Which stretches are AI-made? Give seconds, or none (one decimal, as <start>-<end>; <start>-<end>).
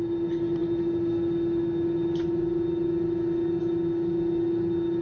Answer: none